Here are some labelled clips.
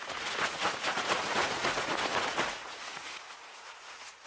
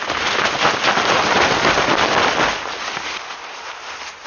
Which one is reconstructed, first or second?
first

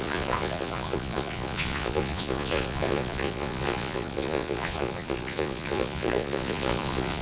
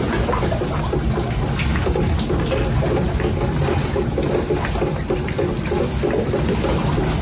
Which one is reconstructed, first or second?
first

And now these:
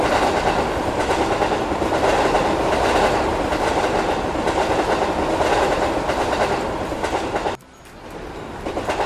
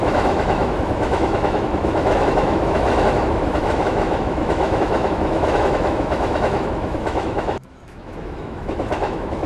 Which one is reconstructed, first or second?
second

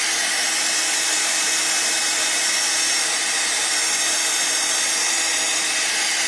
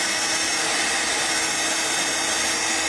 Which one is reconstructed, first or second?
first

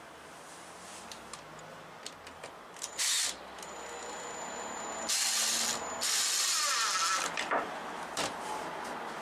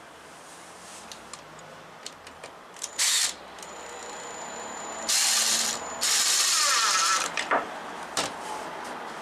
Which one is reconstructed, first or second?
second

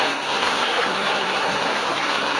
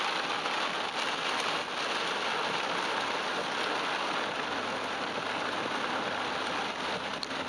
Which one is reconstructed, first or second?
first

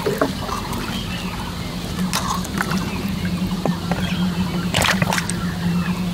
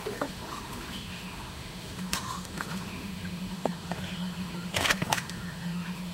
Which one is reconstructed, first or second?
second